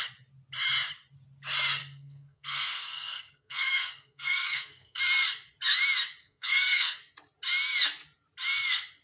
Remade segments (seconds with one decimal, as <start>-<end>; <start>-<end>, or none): 1.8-5.0; 6.2-7.0